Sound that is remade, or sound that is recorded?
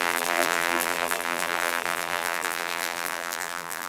remade